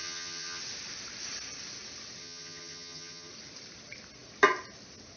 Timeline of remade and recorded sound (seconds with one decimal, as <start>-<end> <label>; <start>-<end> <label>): 0.0-0.6 remade; 0.6-2.2 recorded; 2.2-3.3 remade; 3.3-5.2 recorded